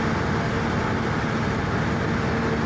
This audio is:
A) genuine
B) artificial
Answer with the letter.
A